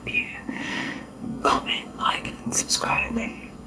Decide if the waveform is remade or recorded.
remade